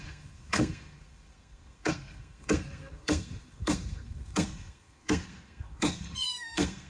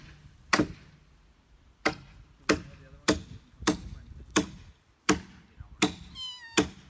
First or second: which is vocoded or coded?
first